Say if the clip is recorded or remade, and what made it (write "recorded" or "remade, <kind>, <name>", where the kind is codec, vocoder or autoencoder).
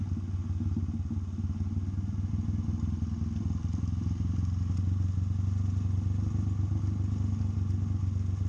recorded